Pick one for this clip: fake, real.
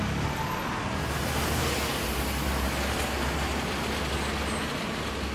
real